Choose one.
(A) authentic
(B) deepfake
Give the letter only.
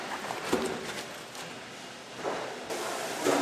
A